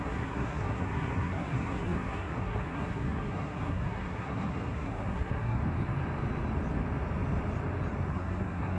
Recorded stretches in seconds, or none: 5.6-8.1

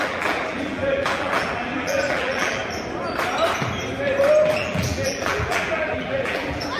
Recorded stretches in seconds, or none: 2.6-4.5